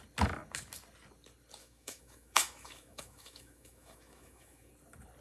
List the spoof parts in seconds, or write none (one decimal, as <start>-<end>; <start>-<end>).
1.6-4.7